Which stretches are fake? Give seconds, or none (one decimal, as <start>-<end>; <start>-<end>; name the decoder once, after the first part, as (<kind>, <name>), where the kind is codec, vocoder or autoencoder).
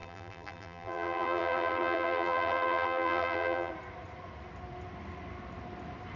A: 0.0-3.7 (vocoder, BigVGAN v2)